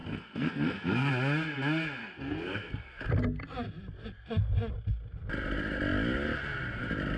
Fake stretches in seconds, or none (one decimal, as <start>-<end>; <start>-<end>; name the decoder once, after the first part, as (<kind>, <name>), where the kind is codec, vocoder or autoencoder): 0.0-1.1 (codec, SNAC); 2.0-3.0